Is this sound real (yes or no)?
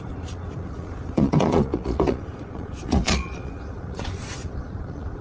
no